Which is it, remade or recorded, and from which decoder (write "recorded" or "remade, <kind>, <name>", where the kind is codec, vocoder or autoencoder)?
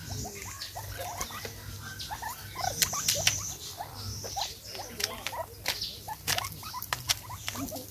recorded